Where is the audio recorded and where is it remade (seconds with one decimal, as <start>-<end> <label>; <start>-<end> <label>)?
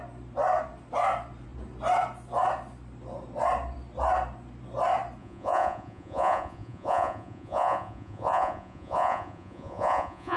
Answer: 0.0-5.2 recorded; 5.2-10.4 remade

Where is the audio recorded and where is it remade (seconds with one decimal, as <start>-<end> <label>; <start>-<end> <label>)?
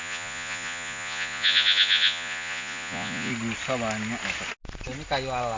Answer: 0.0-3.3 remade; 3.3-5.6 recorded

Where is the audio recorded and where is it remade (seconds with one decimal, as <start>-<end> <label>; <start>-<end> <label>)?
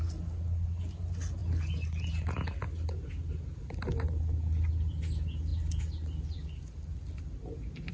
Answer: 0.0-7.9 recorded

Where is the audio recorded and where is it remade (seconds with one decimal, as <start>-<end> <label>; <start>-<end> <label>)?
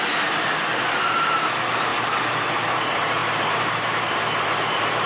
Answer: 0.0-5.1 recorded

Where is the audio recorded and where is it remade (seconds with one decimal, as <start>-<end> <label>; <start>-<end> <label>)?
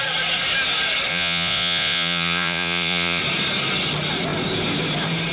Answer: 0.0-1.1 recorded; 1.1-3.2 remade; 3.2-5.3 recorded